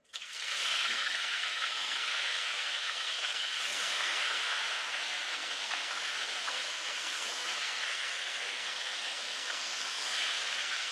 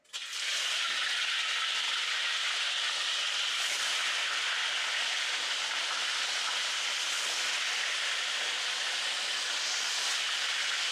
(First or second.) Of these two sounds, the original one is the second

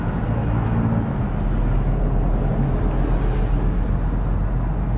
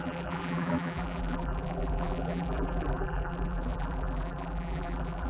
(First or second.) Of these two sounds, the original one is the first